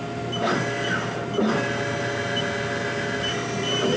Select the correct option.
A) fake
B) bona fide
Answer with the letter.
B